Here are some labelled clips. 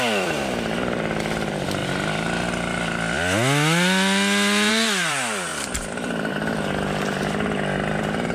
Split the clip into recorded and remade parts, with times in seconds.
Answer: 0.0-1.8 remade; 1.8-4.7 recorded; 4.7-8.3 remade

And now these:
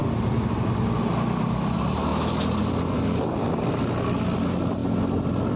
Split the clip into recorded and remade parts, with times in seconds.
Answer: 0.0-2.1 recorded; 2.1-3.5 remade; 3.5-4.8 recorded; 4.8-5.6 remade

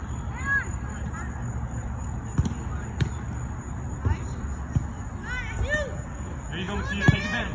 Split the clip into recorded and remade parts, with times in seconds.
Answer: 0.0-2.3 remade; 2.3-6.8 recorded; 6.8-7.5 remade

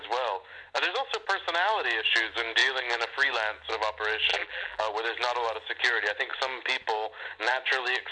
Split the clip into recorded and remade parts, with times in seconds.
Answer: 0.0-4.3 recorded; 4.3-4.8 remade; 4.8-8.1 recorded

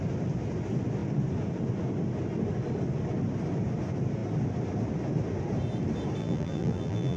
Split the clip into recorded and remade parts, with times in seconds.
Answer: 0.0-6.2 recorded; 6.2-7.2 remade